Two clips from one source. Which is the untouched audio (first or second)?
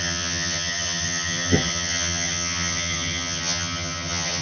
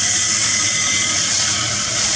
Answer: second